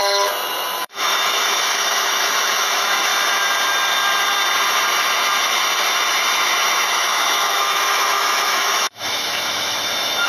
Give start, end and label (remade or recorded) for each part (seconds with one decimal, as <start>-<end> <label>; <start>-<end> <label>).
0.0-0.8 recorded; 0.8-3.1 remade; 3.1-6.9 recorded; 6.9-10.3 remade